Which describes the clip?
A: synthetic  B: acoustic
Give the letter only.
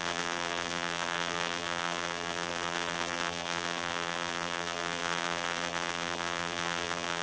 A